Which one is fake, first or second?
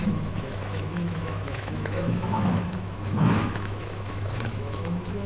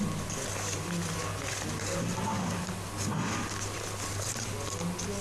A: first